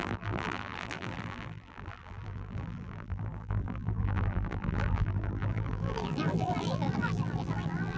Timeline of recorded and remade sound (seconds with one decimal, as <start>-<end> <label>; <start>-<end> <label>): 0.0-8.0 remade